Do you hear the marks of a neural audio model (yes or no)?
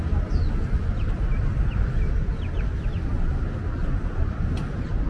no